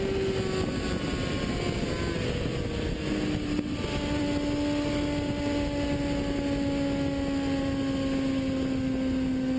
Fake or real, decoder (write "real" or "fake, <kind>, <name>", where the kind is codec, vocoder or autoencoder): real